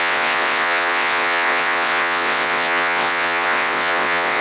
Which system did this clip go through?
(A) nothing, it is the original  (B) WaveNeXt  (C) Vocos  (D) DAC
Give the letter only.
B